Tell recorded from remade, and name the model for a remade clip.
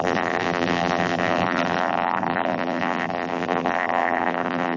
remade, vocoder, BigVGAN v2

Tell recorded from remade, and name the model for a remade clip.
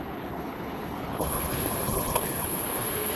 remade, codec, HILCodec